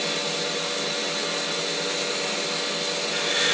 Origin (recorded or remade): recorded